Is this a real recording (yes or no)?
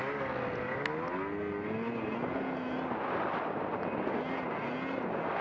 yes